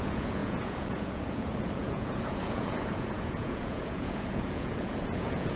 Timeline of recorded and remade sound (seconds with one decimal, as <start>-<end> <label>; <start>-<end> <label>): 0.0-5.6 remade